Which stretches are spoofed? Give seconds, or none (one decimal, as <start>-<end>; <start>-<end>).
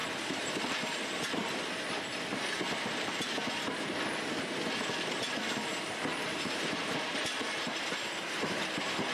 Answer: 0.0-1.6; 6.2-8.6